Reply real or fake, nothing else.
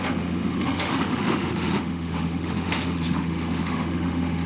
fake